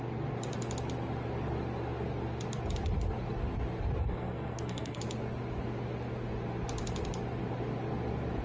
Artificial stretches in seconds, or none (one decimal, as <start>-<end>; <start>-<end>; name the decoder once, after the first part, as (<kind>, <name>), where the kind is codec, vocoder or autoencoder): 4.0-5.0 (codec, SNAC)